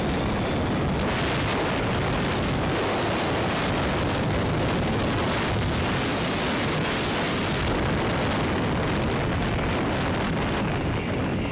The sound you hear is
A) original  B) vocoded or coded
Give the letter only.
A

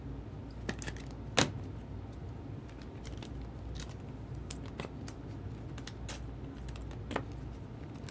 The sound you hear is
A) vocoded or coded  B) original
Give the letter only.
B